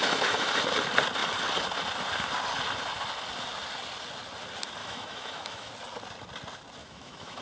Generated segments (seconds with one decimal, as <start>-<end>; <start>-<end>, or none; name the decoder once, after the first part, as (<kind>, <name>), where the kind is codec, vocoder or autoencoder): 0.0-0.5 (autoencoder, DAC-VAE); 4.8-5.7; 6.8-7.4